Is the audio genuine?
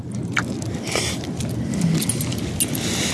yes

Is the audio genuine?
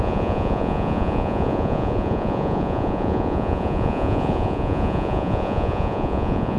no